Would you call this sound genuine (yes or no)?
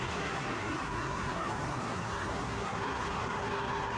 no